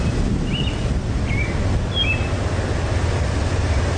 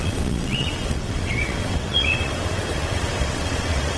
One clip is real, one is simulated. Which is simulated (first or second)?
second